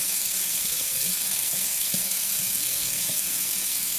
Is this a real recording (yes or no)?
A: no